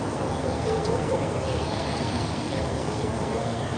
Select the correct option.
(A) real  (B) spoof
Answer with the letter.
B